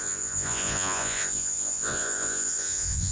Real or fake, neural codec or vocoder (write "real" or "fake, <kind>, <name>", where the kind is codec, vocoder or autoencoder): fake, vocoder, Vocos